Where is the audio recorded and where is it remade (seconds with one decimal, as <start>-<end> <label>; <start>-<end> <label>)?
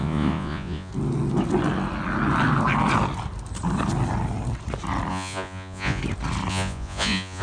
0.0-0.9 remade; 0.9-5.1 recorded; 5.1-6.0 remade; 6.0-6.5 recorded; 6.5-7.4 remade